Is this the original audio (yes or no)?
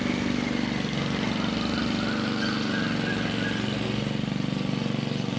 yes